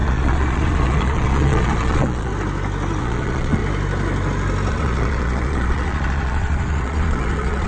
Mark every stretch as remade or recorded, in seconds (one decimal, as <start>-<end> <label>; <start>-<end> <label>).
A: 0.0-2.3 remade; 2.3-3.0 recorded; 3.0-3.6 remade; 3.6-4.7 recorded; 4.7-7.7 remade